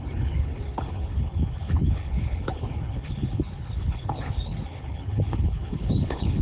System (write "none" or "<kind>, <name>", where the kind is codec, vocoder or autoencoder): codec, HILCodec